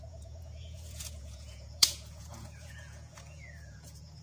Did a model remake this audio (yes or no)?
yes